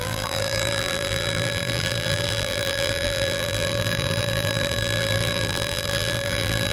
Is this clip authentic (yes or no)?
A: no